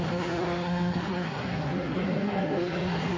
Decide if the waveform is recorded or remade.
remade